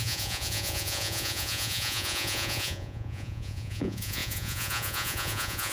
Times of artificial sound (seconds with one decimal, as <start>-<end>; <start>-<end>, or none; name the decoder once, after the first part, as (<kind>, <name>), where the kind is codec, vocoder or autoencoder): 0.0-5.7 (vocoder, Vocos)